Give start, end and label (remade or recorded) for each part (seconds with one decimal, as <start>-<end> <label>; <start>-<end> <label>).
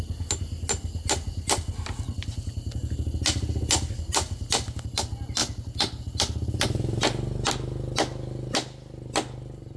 0.0-9.8 recorded